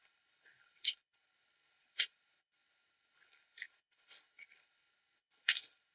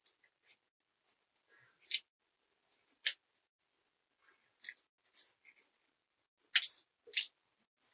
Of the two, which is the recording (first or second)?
second